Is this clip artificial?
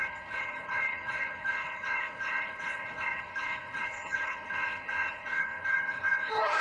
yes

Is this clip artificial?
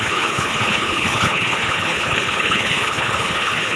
yes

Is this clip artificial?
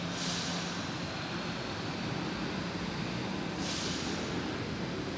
no